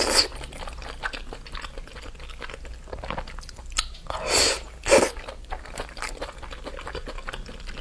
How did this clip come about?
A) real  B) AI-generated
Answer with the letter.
A